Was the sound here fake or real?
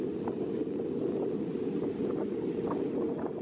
real